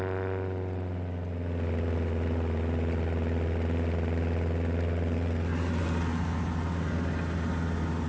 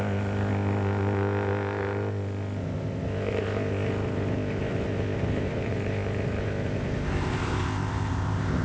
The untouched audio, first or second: first